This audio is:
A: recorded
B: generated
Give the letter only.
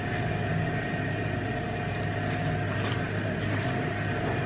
A